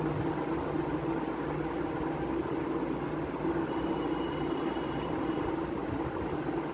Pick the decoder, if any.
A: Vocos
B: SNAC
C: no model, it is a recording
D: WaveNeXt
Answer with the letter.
C